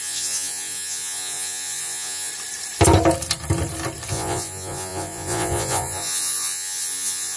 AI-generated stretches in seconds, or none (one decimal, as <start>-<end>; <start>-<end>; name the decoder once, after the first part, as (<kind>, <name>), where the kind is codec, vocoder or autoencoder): 0.0-2.3 (vocoder, Vocos); 4.1-7.4

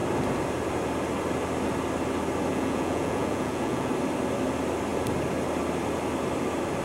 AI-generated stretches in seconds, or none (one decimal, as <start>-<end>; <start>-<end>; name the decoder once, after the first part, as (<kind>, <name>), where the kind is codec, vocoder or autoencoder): 2.5-3.9 (vocoder, Vocos)

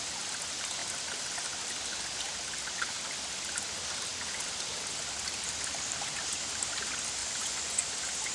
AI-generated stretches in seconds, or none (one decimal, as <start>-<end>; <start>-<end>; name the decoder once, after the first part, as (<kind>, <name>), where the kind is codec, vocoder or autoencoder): 7.2-7.9 (vocoder, Vocos)

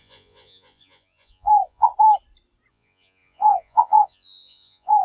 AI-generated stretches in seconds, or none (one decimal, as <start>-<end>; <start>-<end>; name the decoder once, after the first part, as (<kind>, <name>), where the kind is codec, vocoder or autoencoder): 0.0-1.9 (vocoder, Vocos); 2.7-5.0

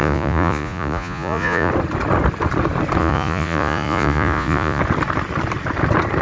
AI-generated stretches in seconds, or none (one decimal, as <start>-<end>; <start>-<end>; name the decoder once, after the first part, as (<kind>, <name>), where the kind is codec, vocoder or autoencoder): 0.0-1.7 (vocoder, Vocos); 3.0-4.8

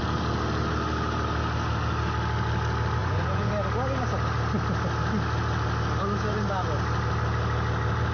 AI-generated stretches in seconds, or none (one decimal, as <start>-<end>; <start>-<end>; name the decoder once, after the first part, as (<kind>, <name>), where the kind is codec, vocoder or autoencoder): 3.0-3.5 (vocoder, Vocos)

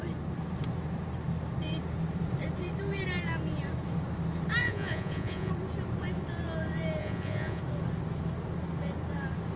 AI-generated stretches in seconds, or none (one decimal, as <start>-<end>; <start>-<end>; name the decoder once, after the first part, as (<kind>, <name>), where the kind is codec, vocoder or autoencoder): 4.6-5.5 (vocoder, Vocos); 7.0-7.6